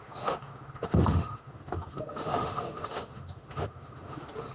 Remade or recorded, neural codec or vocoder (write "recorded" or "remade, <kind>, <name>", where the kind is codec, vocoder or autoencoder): remade, autoencoder, DAC-VAE